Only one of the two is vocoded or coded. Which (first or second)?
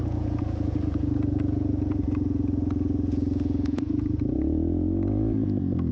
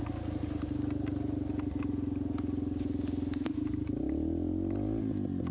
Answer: first